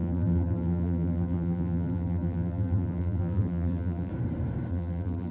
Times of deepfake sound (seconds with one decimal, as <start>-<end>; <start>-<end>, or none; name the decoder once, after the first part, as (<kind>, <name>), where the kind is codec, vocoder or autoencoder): 0.0-4.1 (vocoder, BigVGAN v2); 4.7-5.3